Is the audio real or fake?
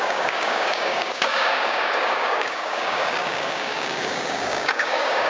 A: fake